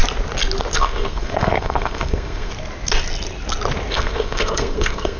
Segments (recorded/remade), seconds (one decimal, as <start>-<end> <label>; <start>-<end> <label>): 0.0-0.8 recorded; 0.8-2.5 remade; 2.5-3.9 recorded; 3.9-5.2 remade